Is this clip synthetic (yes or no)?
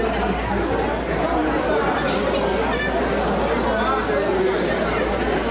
no